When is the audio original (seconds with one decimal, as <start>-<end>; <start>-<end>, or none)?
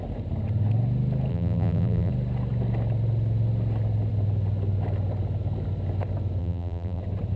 0.0-1.3; 2.1-6.4; 7.0-7.4